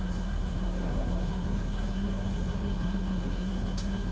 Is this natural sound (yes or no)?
no